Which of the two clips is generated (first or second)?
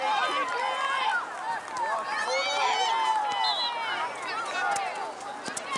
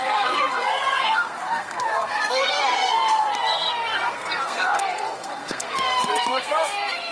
second